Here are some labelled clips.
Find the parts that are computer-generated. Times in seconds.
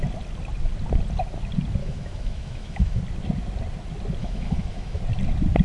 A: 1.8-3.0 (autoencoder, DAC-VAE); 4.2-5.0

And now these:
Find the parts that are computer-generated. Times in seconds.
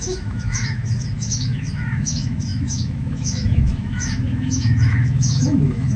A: 0.0-6.0 (autoencoder, DAC-VAE)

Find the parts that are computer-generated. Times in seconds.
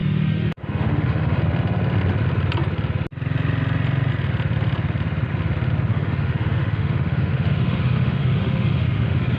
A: 0.0-1.4 (autoencoder, DAC-VAE); 5.9-9.4